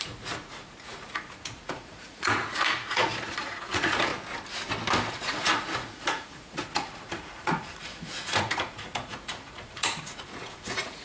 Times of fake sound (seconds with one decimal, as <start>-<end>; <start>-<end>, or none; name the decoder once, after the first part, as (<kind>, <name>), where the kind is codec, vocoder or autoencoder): 0.0-4.1 (vocoder, Vocos); 5.1-11.0